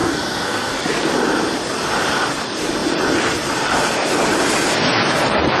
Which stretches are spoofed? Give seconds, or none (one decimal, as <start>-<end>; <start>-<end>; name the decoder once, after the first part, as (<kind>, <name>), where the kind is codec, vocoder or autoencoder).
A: 0.0-0.8 (codec, SNAC)